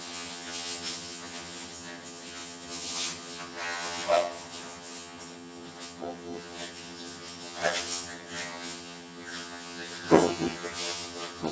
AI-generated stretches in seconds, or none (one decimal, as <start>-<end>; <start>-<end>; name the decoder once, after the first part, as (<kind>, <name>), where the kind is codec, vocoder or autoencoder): 0.0-11.5 (vocoder, HiFi-GAN)